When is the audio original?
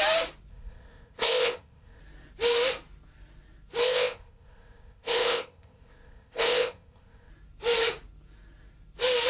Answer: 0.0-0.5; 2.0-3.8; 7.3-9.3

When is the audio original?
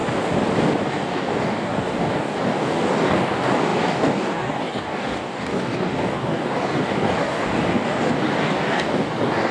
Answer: 0.0-0.8